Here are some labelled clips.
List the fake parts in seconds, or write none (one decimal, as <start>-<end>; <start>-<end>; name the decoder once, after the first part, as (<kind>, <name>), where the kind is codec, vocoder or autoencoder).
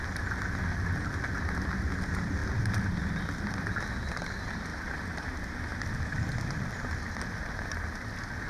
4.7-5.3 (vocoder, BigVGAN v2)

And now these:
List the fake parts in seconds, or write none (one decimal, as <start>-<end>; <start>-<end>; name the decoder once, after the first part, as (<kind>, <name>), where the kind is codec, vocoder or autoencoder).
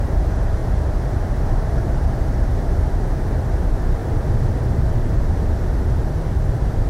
0.0-4.0 (vocoder, BigVGAN v2); 4.5-6.9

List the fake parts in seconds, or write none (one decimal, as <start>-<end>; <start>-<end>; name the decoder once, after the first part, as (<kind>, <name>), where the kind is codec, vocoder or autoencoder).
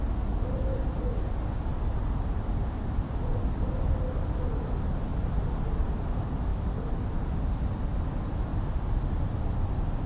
5.1-5.6 (vocoder, BigVGAN v2); 6.5-7.1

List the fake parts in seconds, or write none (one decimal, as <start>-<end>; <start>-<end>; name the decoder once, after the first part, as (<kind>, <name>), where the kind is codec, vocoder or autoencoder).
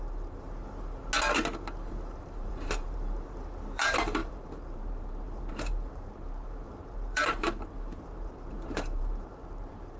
0.0-0.6 (vocoder, BigVGAN v2); 1.9-10.0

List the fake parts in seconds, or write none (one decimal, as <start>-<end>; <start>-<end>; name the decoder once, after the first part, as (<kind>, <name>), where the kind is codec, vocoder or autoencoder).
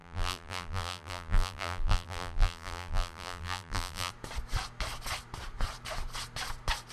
0.0-4.1 (vocoder, BigVGAN v2)